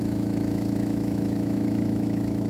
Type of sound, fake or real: fake